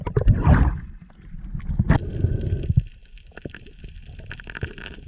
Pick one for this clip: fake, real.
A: real